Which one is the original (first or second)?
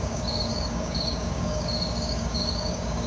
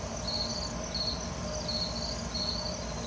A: second